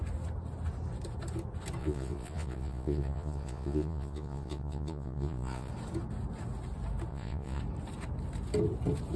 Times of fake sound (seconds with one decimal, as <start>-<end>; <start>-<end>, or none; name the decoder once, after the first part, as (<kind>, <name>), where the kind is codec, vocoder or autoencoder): 1.8-5.7 (vocoder, Vocos); 7.1-7.6

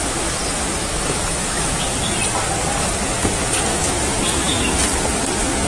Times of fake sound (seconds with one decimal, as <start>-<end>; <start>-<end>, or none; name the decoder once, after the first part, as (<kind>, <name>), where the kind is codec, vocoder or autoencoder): 0.8-1.8 (autoencoder, DAC-VAE); 3.7-4.8

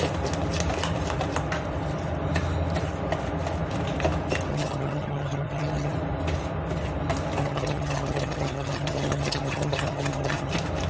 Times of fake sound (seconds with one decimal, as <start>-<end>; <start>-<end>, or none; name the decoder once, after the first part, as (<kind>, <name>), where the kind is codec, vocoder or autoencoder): 4.5-5.9 (vocoder, HiFi-GAN); 7.4-10.5

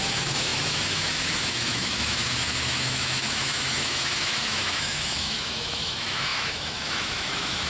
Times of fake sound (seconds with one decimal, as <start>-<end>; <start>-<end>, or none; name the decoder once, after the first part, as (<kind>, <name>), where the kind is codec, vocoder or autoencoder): 0.0-7.7 (autoencoder, DAC-VAE)

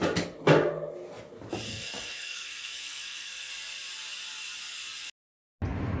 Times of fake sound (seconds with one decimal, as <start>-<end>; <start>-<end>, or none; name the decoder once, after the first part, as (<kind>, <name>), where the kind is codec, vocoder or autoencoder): 1.7-3.5 (codec, SNAC)

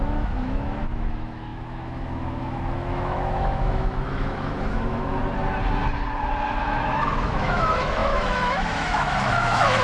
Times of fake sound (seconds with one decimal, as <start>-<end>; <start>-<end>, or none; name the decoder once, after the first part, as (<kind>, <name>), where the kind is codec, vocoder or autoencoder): 0.0-5.2 (autoencoder, DAC-VAE); 6.6-9.8